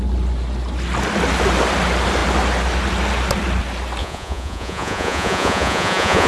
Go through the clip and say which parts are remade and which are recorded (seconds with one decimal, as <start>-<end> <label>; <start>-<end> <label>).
0.0-4.0 recorded; 4.0-6.3 remade